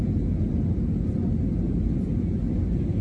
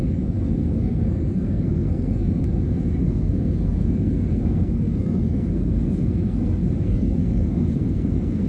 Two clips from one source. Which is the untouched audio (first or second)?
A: first